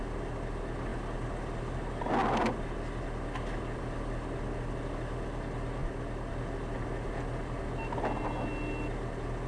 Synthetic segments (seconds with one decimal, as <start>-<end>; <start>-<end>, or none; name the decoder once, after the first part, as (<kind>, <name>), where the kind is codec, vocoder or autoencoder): 5.8-6.3 (vocoder, BigVGAN v2)